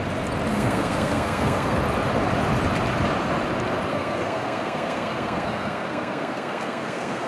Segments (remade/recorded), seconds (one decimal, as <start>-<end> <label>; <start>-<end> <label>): 0.0-0.5 recorded; 0.5-1.8 remade; 1.8-3.9 recorded; 3.9-7.3 remade